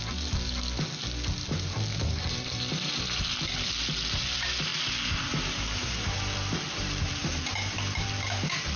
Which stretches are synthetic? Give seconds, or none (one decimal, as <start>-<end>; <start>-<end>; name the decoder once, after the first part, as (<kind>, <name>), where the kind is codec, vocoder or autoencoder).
1.9-3.2 (vocoder, BigVGAN v2); 4.7-8.8